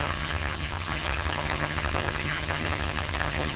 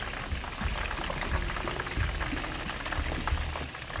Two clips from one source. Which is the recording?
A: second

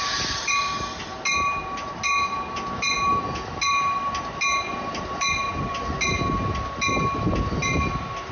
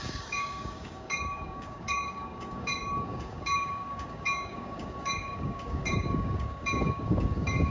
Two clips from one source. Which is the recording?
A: first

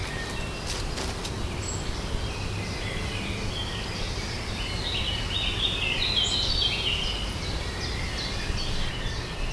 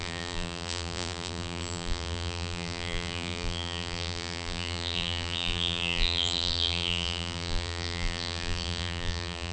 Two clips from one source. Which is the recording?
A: first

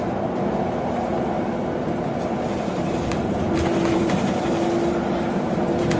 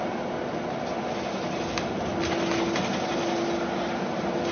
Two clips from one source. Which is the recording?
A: second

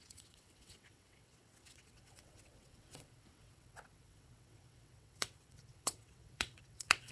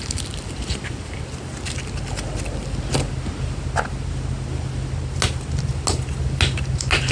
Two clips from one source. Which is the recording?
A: second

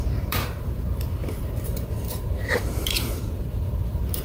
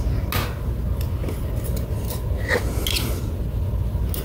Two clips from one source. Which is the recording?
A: second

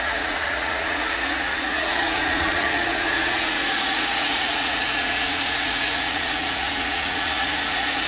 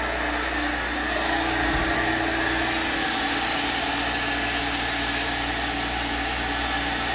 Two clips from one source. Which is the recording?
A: second